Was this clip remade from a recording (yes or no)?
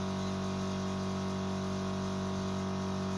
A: no